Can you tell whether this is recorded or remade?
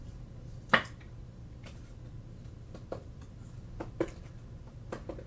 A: recorded